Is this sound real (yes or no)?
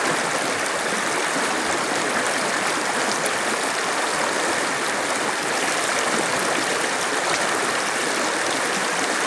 yes